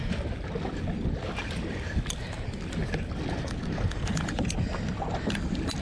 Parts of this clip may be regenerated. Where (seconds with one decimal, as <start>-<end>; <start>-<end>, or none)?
none